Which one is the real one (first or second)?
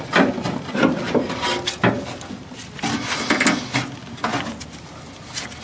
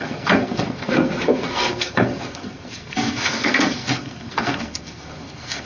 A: first